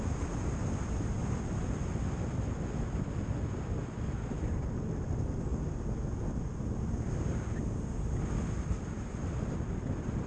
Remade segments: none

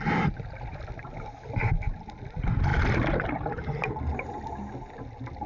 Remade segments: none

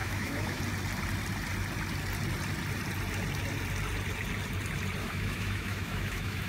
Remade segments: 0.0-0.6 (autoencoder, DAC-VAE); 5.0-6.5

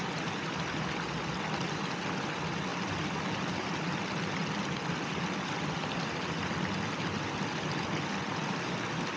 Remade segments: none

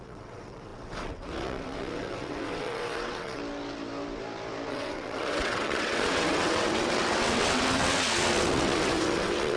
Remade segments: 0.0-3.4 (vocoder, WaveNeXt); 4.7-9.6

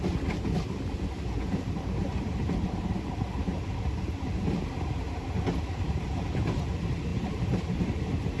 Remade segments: 7.1-8.0 (vocoder, BigVGAN v2)

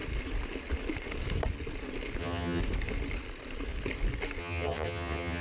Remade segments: 2.2-2.6 (vocoder, HiFi-GAN); 4.4-5.4